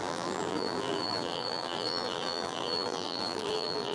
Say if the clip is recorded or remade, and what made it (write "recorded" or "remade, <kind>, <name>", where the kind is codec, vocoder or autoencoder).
remade, vocoder, BigVGAN v2